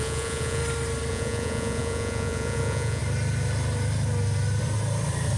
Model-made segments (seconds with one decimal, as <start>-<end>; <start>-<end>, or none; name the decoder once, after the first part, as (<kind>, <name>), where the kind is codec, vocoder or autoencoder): 0.0-0.6 (vocoder, Vocos); 1.1-3.0